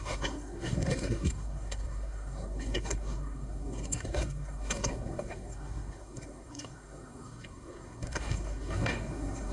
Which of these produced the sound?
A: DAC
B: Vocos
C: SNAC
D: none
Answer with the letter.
C